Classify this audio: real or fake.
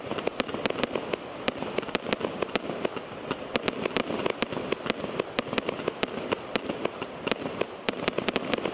real